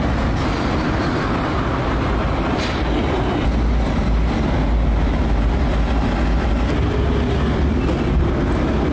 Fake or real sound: real